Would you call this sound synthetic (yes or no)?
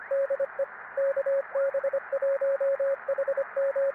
no